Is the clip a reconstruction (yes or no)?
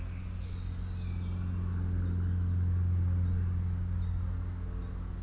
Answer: no